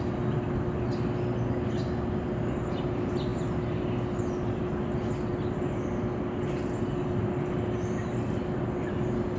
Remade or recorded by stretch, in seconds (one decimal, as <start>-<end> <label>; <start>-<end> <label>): 0.0-9.4 recorded